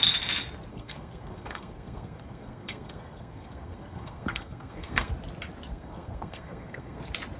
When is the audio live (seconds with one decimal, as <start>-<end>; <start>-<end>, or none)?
0.0-0.7; 5.1-5.7; 7.0-7.4